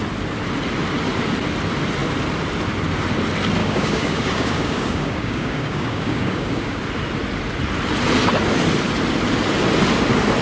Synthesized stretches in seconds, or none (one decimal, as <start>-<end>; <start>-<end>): 3.6-6.8